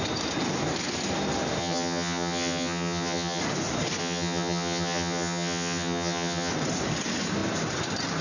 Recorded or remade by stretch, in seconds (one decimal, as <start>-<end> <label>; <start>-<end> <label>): 0.0-1.6 recorded; 1.6-3.4 remade; 3.4-4.0 recorded; 4.0-6.5 remade; 6.5-8.2 recorded